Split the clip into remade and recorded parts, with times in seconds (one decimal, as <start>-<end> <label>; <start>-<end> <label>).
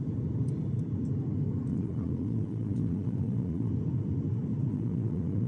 0.0-1.7 recorded; 1.7-3.7 remade; 3.7-4.7 recorded; 4.7-5.5 remade